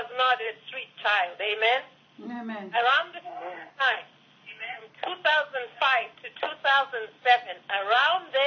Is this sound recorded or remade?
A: recorded